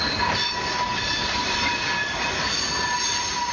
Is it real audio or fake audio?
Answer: real